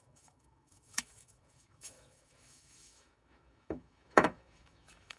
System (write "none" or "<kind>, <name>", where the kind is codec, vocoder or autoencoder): autoencoder, DAC-VAE